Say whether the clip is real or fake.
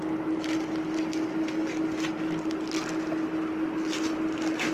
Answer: real